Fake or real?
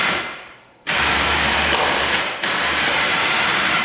fake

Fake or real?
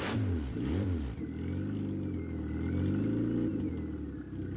real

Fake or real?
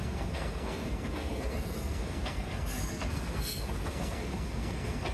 fake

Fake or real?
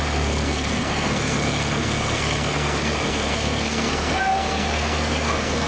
fake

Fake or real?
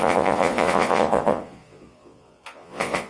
fake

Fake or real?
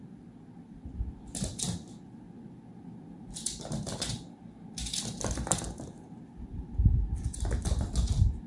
real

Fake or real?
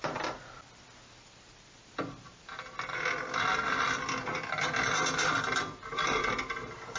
real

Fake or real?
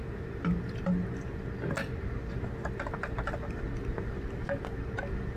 real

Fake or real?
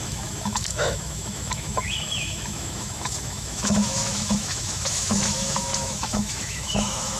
fake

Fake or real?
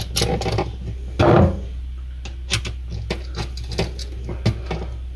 real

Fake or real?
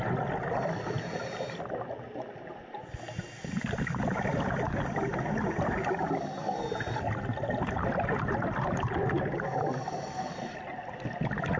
real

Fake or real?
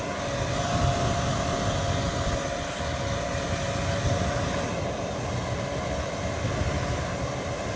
real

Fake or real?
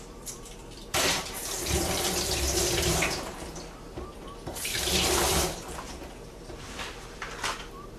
fake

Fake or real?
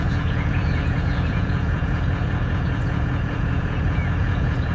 fake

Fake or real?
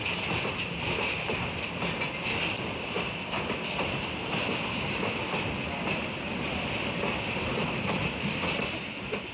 real